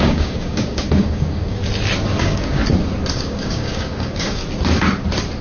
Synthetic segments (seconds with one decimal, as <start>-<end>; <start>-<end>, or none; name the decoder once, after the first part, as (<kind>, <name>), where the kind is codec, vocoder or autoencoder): 0.0-1.6 (codec, DAC); 2.2-2.6; 3.1-4.4